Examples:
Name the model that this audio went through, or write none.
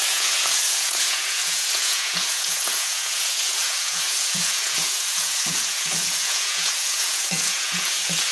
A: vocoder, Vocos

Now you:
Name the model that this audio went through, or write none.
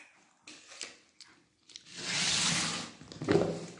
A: none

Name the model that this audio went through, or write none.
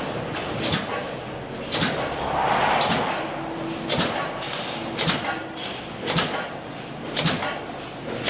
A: none